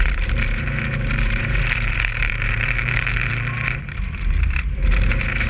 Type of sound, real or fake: fake